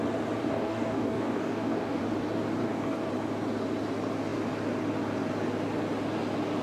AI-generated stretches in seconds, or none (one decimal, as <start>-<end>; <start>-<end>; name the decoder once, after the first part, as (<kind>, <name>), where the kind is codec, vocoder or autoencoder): 0.4-2.0 (codec, DAC); 2.6-3.1